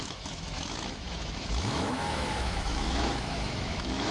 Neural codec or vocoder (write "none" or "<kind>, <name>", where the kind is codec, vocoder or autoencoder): autoencoder, DAC-VAE